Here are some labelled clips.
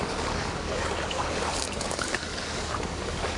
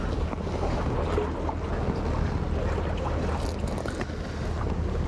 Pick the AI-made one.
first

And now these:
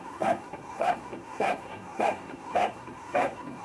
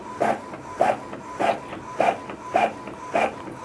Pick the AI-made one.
first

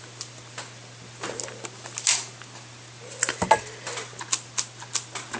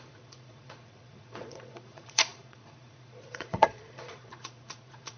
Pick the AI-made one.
second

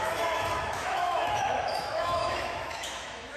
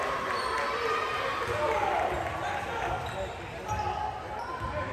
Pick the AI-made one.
first